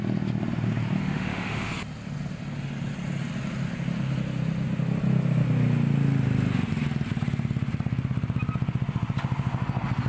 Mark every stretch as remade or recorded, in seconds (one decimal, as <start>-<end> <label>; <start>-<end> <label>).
0.0-1.0 recorded; 1.0-1.7 remade; 1.7-10.1 recorded